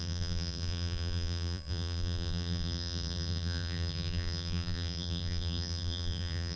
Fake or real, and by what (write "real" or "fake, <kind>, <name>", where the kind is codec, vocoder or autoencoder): fake, vocoder, BigVGAN v2